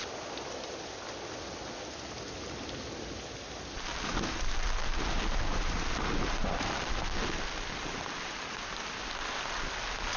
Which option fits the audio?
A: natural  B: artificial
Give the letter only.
A